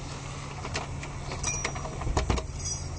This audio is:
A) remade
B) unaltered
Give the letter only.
B